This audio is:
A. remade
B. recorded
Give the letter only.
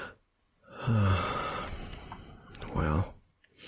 B